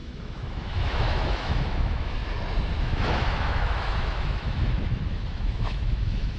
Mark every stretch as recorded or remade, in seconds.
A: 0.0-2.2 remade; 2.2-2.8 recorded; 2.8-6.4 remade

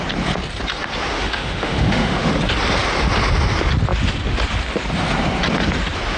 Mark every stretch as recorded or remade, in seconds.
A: 0.0-1.1 recorded; 1.1-2.3 remade; 2.3-6.2 recorded

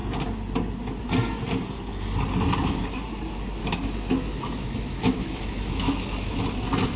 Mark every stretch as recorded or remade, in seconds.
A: 0.0-3.6 recorded; 3.6-6.4 remade; 6.4-7.0 recorded

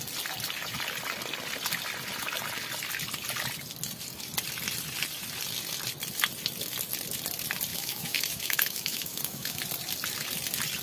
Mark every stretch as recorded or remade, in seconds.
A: 0.0-7.7 recorded; 7.7-9.6 remade; 9.6-10.8 recorded

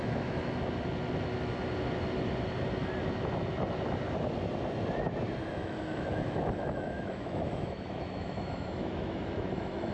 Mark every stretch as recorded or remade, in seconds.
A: 0.0-0.4 remade; 0.4-5.5 recorded; 5.5-9.9 remade